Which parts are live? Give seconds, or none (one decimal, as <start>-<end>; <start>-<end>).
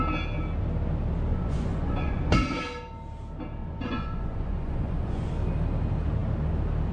0.0-1.3; 2.6-3.6; 5.3-6.9